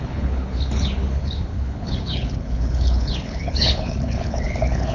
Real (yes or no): no